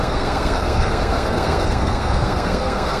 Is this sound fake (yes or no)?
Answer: yes